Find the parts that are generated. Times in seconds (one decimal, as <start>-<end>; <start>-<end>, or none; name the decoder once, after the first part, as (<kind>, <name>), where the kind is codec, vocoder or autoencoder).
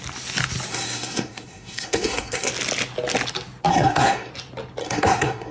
0.7-2.5 (codec, SNAC); 3.7-4.3; 4.8-5.5